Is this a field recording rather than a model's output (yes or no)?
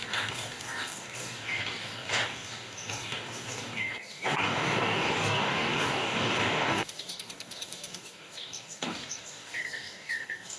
no